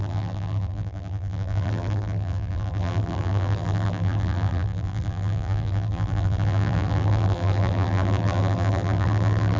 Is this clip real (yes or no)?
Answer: no